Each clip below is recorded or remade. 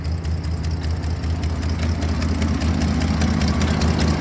recorded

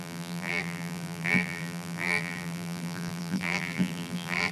remade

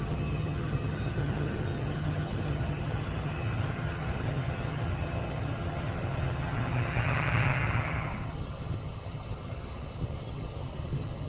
remade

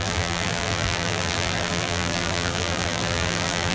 remade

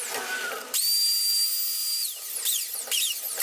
recorded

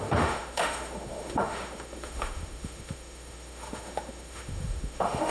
remade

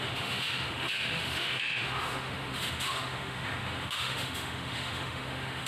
remade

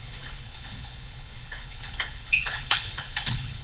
remade